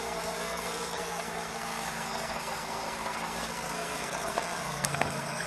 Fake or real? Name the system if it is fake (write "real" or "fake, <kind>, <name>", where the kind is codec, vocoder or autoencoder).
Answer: fake, codec, SNAC